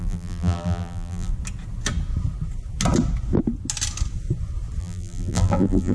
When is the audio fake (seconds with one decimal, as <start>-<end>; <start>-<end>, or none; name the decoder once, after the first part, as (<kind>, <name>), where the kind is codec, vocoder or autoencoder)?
0.0-1.3 (vocoder, BigVGAN v2); 4.8-5.9